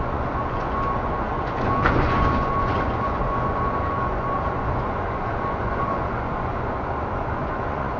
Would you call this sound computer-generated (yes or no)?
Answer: yes